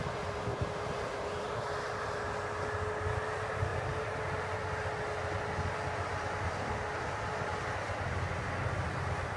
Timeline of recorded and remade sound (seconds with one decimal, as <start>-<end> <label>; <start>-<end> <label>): 0.0-0.5 recorded; 0.5-2.2 remade; 2.2-3.7 recorded; 3.7-4.2 remade; 4.2-9.4 recorded